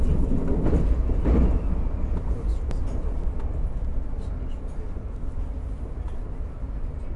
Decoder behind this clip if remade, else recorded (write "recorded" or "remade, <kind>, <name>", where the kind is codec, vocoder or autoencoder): recorded